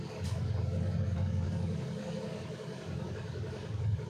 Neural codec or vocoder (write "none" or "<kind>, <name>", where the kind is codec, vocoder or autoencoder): codec, DAC